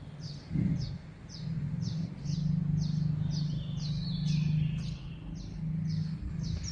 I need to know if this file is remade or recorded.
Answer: recorded